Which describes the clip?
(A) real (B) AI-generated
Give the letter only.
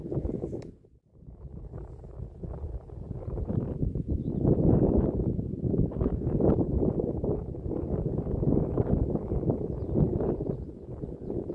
A